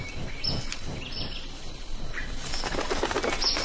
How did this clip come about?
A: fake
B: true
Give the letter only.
B